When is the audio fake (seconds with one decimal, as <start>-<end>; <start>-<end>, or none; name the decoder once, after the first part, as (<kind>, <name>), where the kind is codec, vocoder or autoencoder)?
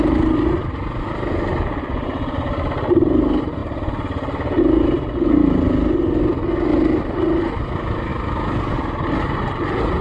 none